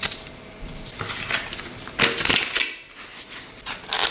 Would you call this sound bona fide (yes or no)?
yes